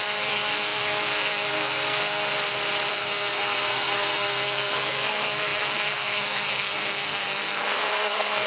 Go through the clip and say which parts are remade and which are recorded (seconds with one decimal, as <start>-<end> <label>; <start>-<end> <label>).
0.0-2.3 remade; 2.3-2.9 recorded; 2.9-8.5 remade